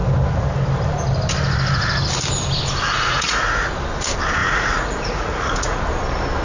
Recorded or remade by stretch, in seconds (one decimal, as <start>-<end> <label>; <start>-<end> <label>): 0.0-2.9 recorded; 2.9-3.7 remade; 3.7-4.4 recorded; 4.4-5.8 remade; 5.8-6.4 recorded